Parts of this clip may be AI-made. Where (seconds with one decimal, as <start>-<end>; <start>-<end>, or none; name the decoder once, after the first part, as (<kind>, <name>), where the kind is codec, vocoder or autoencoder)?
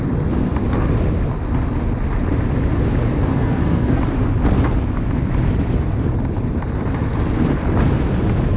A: 3.3-4.0 (codec, SNAC)